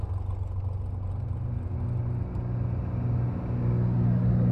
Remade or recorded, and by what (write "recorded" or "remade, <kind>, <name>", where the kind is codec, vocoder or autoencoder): recorded